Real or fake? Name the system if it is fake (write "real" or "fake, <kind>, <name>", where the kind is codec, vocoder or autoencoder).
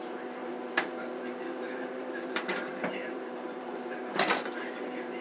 fake, vocoder, BigVGAN v2